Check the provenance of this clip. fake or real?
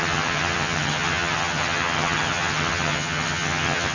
fake